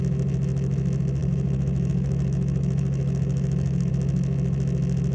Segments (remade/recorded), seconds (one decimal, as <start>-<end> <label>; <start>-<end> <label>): 0.0-1.2 recorded; 1.2-3.9 remade; 3.9-5.1 recorded